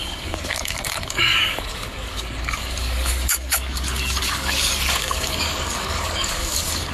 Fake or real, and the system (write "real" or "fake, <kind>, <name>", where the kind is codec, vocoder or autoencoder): fake, codec, DAC